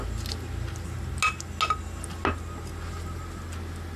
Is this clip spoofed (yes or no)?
no